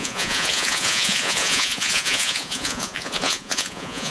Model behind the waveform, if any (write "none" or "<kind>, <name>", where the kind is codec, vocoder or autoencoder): vocoder, Vocos